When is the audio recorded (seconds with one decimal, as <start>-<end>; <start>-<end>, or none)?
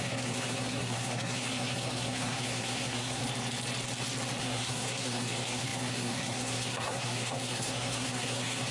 3.2-4.4